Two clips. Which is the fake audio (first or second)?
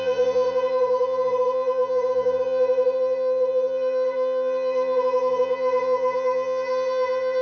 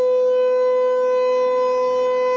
first